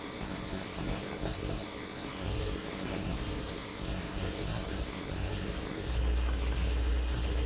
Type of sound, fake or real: fake